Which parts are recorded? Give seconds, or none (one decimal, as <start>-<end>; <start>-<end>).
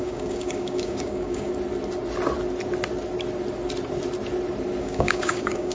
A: 1.5-4.8